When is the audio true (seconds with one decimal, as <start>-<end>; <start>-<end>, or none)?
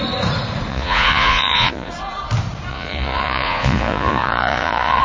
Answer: 0.0-0.7; 1.9-2.7